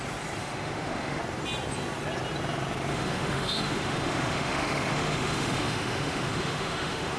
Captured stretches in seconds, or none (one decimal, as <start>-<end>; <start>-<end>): 0.0-0.4; 1.2-2.9